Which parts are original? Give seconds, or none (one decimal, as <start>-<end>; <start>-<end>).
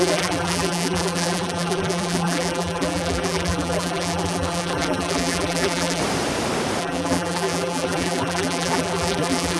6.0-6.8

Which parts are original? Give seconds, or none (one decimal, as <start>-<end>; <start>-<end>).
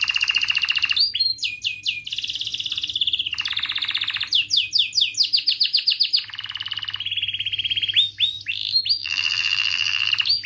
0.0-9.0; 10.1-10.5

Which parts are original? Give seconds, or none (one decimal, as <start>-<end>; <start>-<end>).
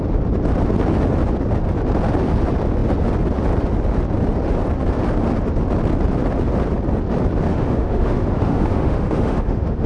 0.0-7.5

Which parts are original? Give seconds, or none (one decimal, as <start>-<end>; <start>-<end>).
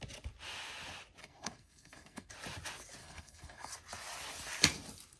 0.0-1.2; 2.3-3.0; 3.7-5.2